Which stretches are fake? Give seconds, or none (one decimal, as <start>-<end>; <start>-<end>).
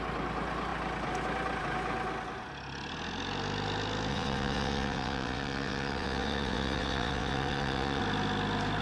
4.1-8.0